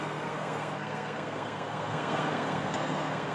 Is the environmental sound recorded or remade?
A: remade